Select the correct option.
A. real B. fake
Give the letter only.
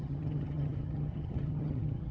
B